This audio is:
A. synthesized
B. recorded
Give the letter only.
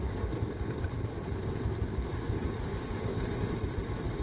B